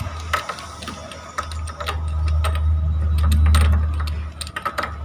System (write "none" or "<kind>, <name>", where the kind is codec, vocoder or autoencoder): none